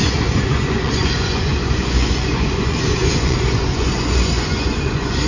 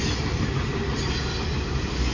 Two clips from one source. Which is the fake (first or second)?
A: first